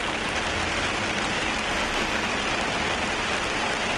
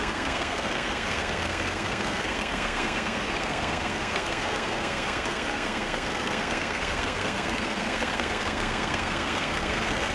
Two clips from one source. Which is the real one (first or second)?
first